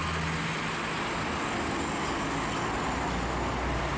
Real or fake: real